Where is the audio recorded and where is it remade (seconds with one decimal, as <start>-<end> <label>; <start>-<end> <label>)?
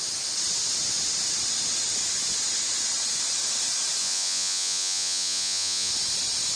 0.0-4.0 recorded; 4.0-5.9 remade; 5.9-6.6 recorded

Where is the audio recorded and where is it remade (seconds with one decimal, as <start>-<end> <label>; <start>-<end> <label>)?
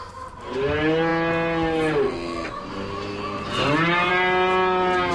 0.0-5.1 recorded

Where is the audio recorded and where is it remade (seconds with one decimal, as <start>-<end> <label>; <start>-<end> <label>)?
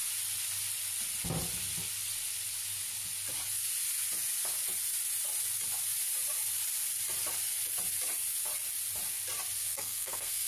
0.0-9.6 recorded; 9.6-10.5 remade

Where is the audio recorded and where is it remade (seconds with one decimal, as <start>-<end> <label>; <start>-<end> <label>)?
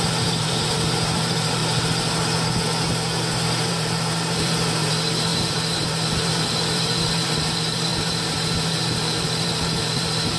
0.0-1.6 remade; 1.6-3.7 recorded; 3.7-10.4 remade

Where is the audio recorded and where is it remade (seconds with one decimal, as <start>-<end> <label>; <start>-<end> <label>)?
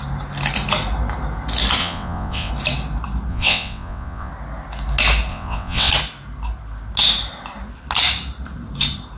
0.0-1.8 recorded; 1.8-2.5 remade; 2.5-3.3 recorded; 3.3-4.3 remade; 4.3-5.3 recorded; 5.3-5.9 remade; 5.9-9.2 recorded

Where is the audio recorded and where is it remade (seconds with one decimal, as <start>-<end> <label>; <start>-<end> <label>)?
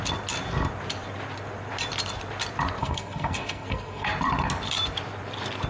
0.0-2.8 recorded; 2.8-4.1 remade; 4.1-5.7 recorded